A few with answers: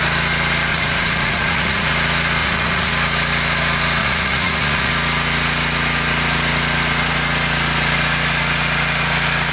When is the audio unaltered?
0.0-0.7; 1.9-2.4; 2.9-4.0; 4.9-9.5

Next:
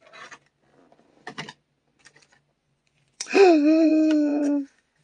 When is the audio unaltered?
0.0-2.6; 3.9-4.3

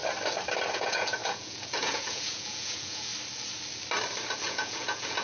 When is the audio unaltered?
0.0-0.7; 3.1-4.4